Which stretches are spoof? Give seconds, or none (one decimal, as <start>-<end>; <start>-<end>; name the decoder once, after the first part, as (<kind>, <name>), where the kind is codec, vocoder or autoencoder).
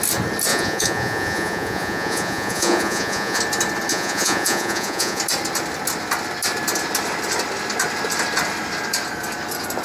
0.5-3.4 (vocoder, Vocos); 3.9-5.2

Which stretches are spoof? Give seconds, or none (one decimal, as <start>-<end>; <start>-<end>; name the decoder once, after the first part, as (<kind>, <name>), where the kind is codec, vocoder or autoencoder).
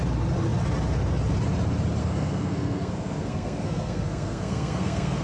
2.0-5.2 (codec, SNAC)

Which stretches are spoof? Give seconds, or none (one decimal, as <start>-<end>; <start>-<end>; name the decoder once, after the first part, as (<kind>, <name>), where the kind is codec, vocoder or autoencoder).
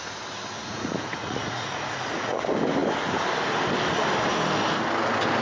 0.6-2.4 (vocoder, Vocos)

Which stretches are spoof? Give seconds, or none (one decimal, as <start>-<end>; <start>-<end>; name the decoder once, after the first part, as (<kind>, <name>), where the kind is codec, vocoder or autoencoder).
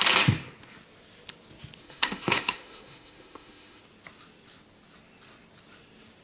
1.8-3.8 (autoencoder, DAC-VAE)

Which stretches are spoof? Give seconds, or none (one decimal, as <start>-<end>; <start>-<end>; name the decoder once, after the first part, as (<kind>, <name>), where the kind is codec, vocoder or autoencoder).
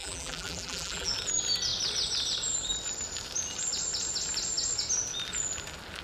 0.0-1.1 (vocoder, BigVGAN v2)